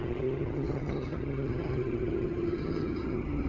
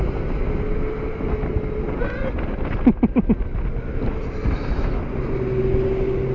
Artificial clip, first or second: first